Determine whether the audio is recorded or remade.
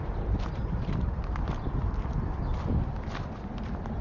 recorded